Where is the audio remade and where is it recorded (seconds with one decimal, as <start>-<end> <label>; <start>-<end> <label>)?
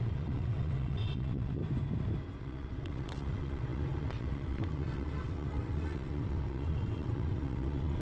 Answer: 0.0-1.6 remade; 1.6-2.4 recorded; 2.4-8.0 remade